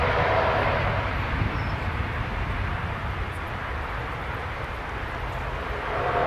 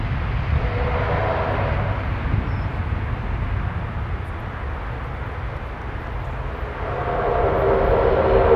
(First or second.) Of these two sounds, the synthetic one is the first